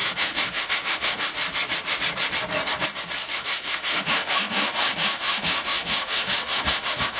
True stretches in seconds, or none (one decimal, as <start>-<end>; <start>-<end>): 1.4-3.3